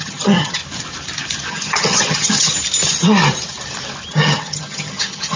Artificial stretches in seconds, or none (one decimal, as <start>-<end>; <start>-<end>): 0.0-0.6; 1.5-2.5; 4.1-5.4